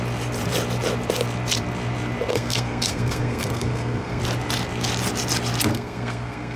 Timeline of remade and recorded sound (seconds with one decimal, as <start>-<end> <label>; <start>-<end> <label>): 0.0-2.3 recorded; 2.3-4.2 remade; 4.2-5.7 recorded; 5.7-6.6 remade